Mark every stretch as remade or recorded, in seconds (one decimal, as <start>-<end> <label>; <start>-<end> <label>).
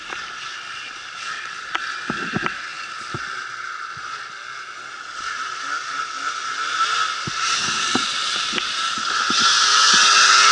0.0-10.5 recorded